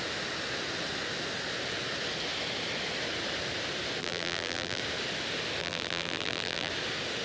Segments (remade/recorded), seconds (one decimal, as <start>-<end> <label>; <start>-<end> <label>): 0.0-4.0 recorded; 4.0-4.8 remade; 4.8-5.6 recorded; 5.6-6.7 remade; 6.7-7.2 recorded